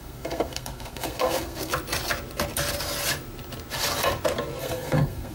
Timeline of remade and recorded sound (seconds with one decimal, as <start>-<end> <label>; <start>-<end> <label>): 0.0-1.7 remade; 1.7-4.6 recorded; 4.6-5.3 remade